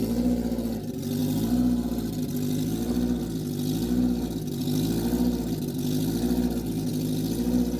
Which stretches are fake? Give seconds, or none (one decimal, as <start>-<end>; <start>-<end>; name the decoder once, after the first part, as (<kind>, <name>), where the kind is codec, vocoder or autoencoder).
none